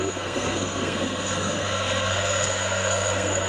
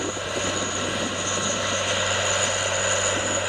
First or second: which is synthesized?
first